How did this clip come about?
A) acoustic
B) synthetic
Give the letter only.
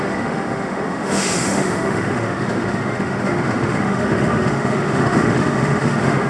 B